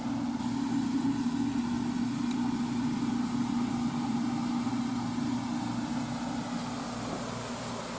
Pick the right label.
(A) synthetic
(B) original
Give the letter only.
B